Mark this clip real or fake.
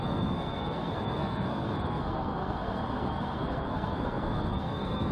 fake